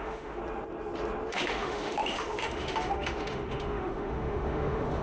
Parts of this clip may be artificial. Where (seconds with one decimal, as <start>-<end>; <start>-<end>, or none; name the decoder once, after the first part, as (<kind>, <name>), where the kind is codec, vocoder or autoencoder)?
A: 0.0-0.4 (autoencoder, DAC-VAE); 1.3-5.0